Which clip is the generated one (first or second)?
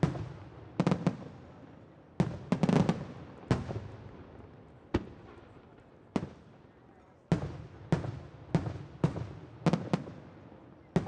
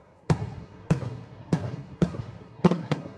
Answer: second